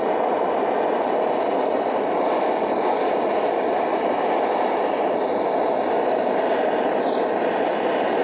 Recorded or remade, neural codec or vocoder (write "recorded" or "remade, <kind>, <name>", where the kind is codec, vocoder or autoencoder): recorded